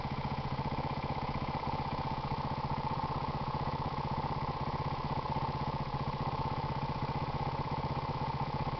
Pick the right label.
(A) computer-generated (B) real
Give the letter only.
A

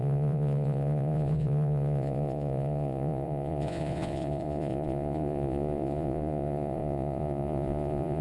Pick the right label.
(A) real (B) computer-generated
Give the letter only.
B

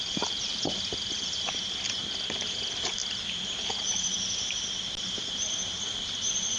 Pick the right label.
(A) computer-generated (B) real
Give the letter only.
B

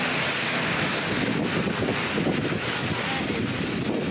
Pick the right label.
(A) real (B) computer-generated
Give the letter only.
A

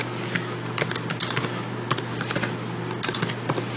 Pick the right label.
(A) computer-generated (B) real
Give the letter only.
B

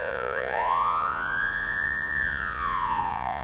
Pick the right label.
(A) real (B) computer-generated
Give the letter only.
B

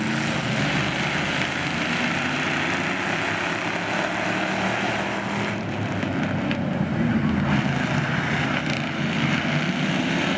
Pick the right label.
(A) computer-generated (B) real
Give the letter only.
B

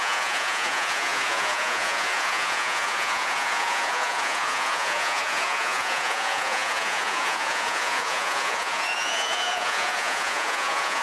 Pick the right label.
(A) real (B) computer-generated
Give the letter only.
B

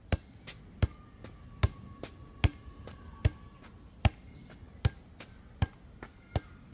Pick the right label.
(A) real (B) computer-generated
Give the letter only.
A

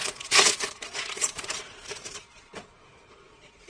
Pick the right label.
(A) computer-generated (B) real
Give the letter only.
A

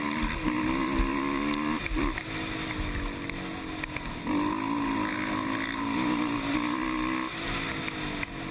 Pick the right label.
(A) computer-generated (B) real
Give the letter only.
B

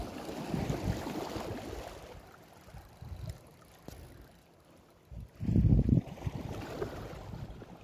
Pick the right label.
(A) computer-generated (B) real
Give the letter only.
B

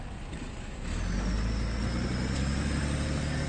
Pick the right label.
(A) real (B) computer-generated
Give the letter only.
A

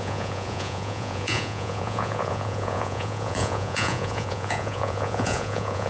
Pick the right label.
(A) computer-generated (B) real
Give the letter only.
A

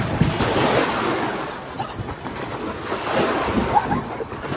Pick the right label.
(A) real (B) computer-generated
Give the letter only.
A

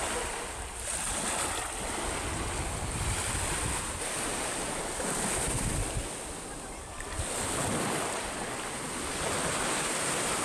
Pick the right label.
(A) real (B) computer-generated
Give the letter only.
A